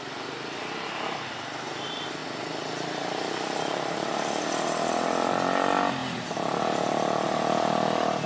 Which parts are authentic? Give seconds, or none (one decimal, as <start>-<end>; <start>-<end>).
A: 0.0-8.3